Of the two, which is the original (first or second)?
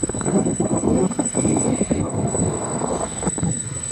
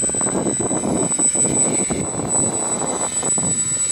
second